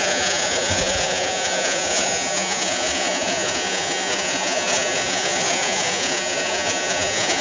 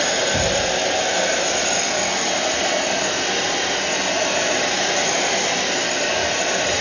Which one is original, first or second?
second